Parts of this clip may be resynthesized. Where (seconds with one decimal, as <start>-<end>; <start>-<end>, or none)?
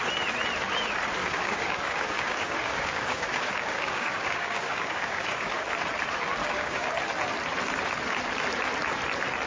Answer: 1.2-5.5; 6.4-6.9